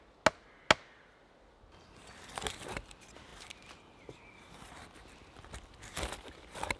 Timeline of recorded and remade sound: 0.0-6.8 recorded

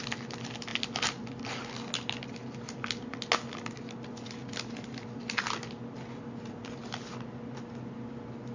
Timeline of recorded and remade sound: 0.0-8.5 recorded